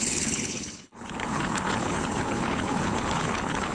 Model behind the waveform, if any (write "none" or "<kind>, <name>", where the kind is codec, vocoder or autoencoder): codec, HILCodec